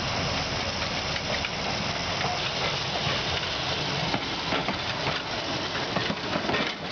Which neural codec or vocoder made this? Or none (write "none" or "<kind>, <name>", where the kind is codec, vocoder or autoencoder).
none